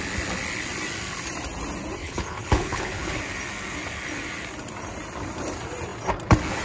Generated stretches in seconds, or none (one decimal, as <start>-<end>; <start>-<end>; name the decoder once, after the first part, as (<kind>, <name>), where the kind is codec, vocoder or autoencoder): 2.0-3.2 (codec, HILCodec)